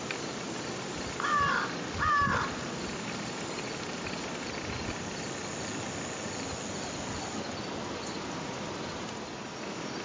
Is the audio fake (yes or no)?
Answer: no